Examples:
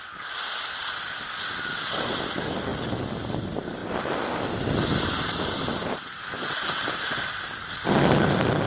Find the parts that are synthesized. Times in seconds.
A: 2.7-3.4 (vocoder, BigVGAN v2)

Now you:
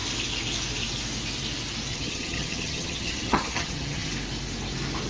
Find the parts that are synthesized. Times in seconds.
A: 1.9-4.1 (vocoder, HiFi-GAN)

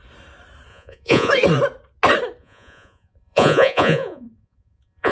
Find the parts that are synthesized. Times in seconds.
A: 0.7-1.3 (vocoder, Vocos); 2.4-5.1

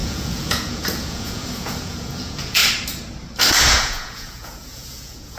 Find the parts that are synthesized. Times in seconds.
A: 0.0-2.6 (vocoder, Vocos); 3.7-5.4

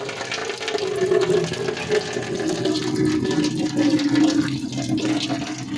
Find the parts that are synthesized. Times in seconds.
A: none

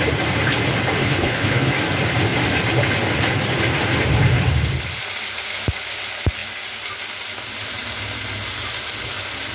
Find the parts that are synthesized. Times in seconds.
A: 1.0-1.7 (codec, HILCodec)

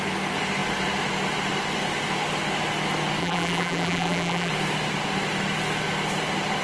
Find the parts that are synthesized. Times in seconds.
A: 3.2-4.5 (vocoder, BigVGAN v2)

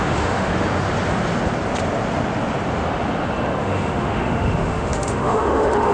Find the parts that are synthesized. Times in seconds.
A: 0.0-0.5 (autoencoder, DAC-VAE); 3.6-5.9